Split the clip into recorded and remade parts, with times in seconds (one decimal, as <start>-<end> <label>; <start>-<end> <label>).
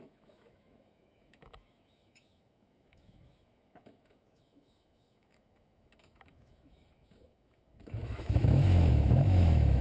0.0-9.8 remade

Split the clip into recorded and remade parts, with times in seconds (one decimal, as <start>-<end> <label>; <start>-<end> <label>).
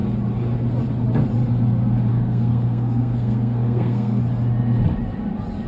0.0-2.1 recorded; 2.1-4.2 remade; 4.2-5.7 recorded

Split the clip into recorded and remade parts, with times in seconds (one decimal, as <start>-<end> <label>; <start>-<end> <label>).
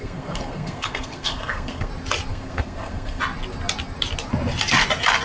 0.0-1.9 remade; 1.9-2.3 recorded; 2.3-3.2 remade; 3.2-5.2 recorded